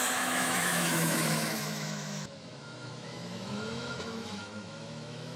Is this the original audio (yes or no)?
no